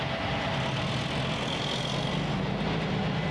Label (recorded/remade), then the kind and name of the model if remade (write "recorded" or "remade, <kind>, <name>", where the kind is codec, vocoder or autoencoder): recorded